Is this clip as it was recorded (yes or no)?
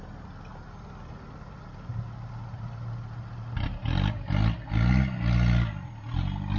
yes